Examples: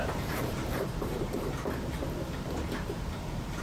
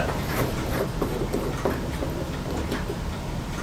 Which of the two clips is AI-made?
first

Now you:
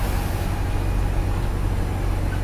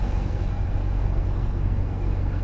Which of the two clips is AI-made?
second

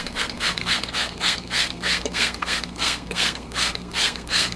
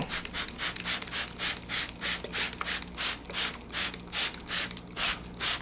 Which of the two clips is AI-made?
first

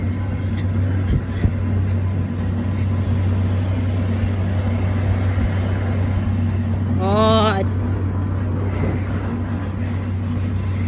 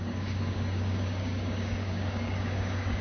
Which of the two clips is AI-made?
second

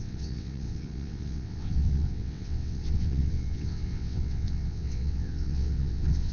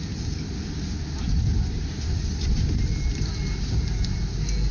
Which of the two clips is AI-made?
first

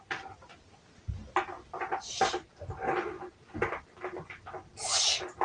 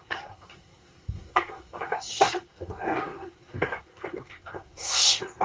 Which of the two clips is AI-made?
second